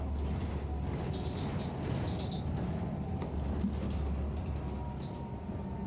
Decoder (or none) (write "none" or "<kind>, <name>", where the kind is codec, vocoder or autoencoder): none